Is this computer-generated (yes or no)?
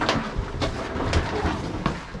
no